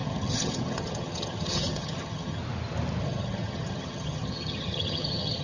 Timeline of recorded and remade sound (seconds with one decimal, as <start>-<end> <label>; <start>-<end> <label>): 0.0-2.4 remade; 2.4-3.0 recorded; 3.0-5.4 remade